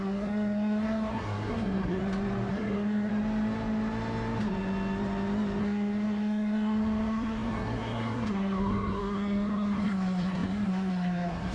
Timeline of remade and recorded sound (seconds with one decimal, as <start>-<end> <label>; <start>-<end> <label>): 0.0-2.0 remade; 2.0-2.5 recorded; 2.5-3.1 remade; 3.1-5.6 recorded; 5.6-11.5 remade